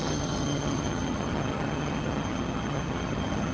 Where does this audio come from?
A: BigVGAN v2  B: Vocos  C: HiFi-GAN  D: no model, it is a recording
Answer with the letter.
C